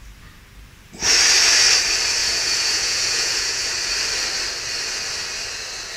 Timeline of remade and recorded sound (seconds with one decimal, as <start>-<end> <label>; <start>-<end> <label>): 0.0-2.2 recorded; 2.2-3.7 remade; 3.7-6.0 recorded